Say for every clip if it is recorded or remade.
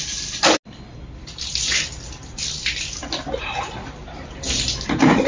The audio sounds recorded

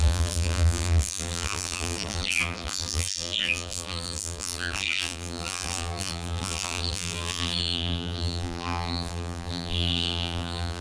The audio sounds remade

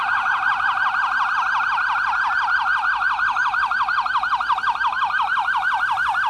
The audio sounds recorded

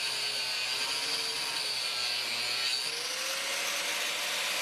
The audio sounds recorded